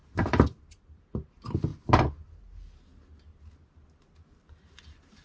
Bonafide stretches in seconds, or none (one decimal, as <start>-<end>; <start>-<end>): 1.0-5.2